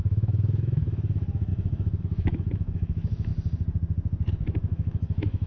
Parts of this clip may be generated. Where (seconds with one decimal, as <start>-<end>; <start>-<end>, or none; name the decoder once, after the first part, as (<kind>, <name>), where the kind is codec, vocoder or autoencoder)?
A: 0.0-3.3 (autoencoder, DAC-VAE); 4.3-5.5